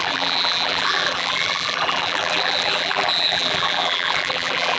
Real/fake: fake